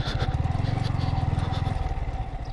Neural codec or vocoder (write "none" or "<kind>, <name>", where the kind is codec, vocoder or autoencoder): none